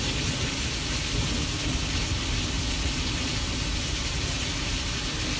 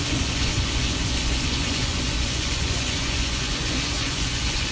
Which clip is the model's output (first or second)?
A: second